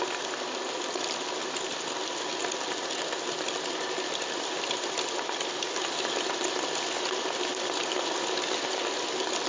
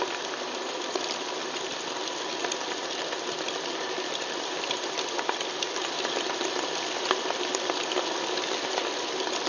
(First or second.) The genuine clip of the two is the first